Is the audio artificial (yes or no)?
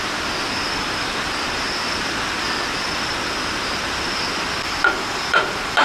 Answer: yes